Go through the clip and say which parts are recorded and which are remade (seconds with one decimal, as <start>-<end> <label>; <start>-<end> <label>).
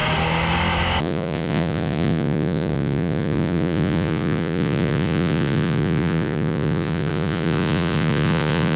0.0-1.0 recorded; 1.0-8.8 remade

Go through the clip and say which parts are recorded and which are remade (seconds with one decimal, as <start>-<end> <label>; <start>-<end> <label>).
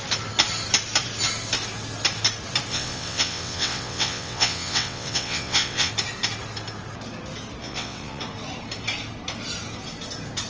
0.0-2.7 recorded; 2.7-5.9 remade; 5.9-7.6 recorded; 7.6-8.2 remade; 8.2-10.5 recorded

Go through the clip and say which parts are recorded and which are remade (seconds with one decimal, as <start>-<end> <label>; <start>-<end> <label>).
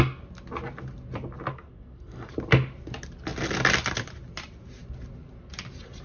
0.0-1.5 recorded; 1.5-2.3 remade; 2.3-6.0 recorded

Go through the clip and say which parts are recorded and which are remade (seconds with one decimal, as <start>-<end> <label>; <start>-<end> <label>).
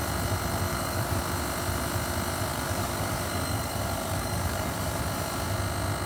0.0-0.7 recorded; 0.7-1.2 remade; 1.2-2.5 recorded; 2.5-5.0 remade; 5.0-6.1 recorded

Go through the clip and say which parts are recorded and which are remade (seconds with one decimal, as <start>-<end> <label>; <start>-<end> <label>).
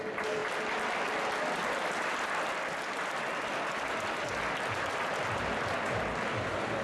0.0-6.8 recorded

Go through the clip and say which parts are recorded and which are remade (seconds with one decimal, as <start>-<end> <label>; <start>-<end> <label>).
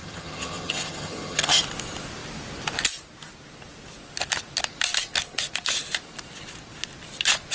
0.0-1.6 remade; 1.6-7.5 recorded